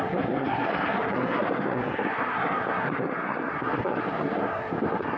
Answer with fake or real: fake